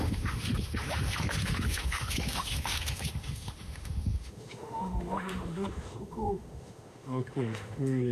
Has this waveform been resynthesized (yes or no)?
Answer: yes